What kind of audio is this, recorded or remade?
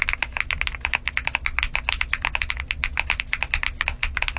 recorded